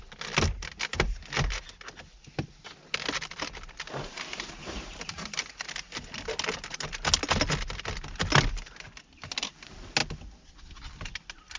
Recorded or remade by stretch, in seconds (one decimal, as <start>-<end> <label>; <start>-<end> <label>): 0.0-4.3 recorded; 4.3-5.7 remade; 5.7-11.6 recorded